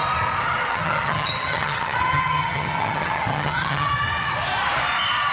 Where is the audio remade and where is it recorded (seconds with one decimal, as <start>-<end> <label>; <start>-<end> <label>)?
0.0-0.7 recorded; 0.7-3.9 remade; 3.9-5.3 recorded